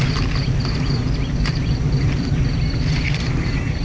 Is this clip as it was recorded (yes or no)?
yes